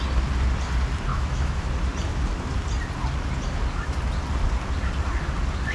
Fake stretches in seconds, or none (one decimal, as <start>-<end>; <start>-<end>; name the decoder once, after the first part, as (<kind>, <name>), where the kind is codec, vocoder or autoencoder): 1.1-1.7 (autoencoder, DAC-VAE)

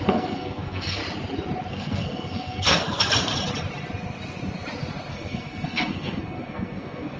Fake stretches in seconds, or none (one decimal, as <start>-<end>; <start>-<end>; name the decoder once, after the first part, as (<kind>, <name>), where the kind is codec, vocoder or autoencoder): 0.0-1.0 (codec, SNAC); 1.7-3.3; 5.1-7.2